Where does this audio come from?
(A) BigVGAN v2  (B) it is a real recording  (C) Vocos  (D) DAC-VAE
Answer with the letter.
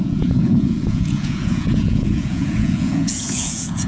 C